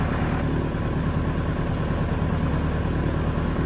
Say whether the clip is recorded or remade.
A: recorded